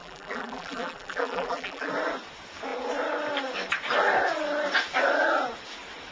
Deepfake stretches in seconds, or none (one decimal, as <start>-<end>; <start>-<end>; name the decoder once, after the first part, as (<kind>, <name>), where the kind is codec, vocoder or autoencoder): 0.0-1.9 (vocoder, BigVGAN v2)